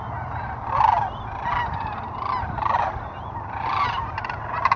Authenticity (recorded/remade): recorded